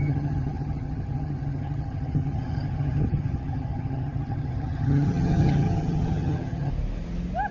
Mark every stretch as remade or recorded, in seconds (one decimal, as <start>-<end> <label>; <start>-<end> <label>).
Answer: 0.0-6.7 remade; 6.7-7.5 recorded